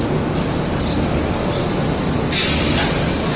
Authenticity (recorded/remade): recorded